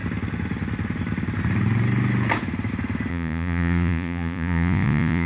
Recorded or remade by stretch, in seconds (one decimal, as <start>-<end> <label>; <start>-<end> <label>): 0.0-3.1 recorded; 3.1-5.3 remade